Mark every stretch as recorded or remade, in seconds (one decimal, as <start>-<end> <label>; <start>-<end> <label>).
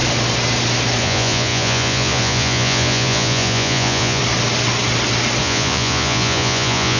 0.0-1.0 recorded; 1.0-4.2 remade; 4.2-5.4 recorded; 5.4-7.0 remade